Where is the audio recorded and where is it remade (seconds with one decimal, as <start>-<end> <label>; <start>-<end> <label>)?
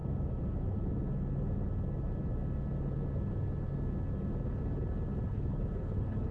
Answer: 0.0-5.3 recorded; 5.3-6.3 remade